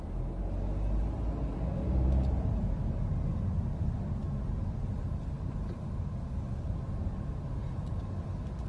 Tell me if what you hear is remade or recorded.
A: recorded